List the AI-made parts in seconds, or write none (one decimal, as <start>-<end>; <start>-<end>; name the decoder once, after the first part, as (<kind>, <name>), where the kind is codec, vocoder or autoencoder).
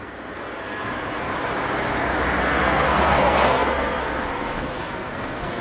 0.0-1.3 (codec, SNAC); 2.4-5.6